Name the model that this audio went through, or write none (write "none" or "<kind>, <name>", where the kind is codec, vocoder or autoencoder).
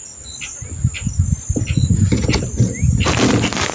none